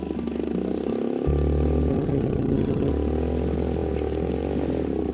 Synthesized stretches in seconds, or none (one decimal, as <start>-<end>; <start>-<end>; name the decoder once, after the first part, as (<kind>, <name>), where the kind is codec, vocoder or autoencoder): 1.9-2.9 (vocoder, HiFi-GAN)